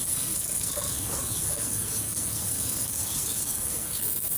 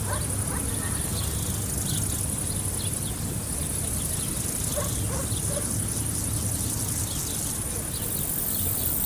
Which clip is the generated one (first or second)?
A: first